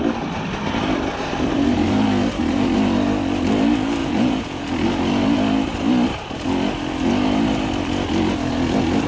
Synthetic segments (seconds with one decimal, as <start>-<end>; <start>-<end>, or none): 4.0-4.6